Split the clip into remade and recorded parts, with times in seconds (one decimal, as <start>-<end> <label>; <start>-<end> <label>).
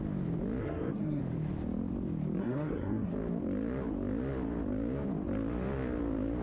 0.0-0.6 recorded; 0.6-1.2 remade; 1.2-2.4 recorded; 2.4-3.1 remade; 3.1-6.4 recorded